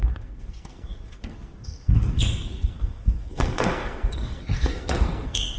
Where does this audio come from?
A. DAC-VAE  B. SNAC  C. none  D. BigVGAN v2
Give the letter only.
B